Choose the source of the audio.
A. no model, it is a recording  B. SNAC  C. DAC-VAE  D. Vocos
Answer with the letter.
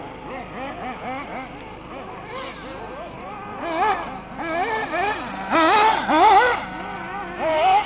A